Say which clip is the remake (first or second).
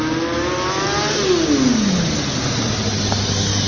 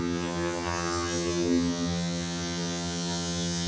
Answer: second